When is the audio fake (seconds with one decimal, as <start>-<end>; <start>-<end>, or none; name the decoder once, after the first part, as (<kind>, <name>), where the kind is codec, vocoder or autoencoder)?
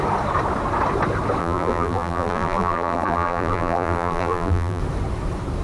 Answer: 1.4-4.8 (vocoder, BigVGAN v2)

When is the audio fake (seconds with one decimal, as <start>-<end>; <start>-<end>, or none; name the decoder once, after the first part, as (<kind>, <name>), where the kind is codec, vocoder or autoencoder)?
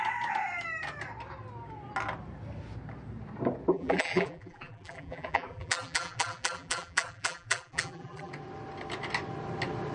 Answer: 3.7-8.3 (vocoder, BigVGAN v2)